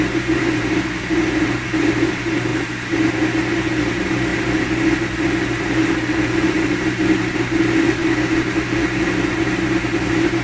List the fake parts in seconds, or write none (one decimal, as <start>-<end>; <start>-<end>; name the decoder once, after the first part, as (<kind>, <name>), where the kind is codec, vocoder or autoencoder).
0.0-2.5 (vocoder, BigVGAN v2); 3.9-4.3; 5.3-8.0; 9.0-10.4